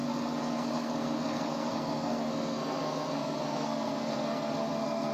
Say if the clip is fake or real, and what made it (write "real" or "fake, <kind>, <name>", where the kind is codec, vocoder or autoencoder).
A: fake, codec, SNAC